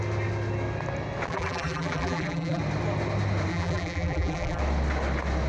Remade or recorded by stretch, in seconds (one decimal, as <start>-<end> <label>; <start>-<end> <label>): 0.0-1.3 recorded; 1.3-2.6 remade; 2.6-3.5 recorded; 3.5-4.6 remade; 4.6-5.5 recorded